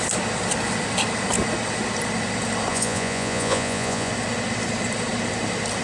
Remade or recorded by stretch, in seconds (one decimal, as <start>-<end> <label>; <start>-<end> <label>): 0.0-2.7 recorded; 2.7-4.1 remade; 4.1-5.8 recorded